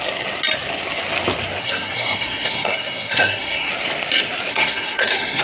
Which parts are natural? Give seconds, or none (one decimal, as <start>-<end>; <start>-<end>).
0.0-1.6; 3.7-4.5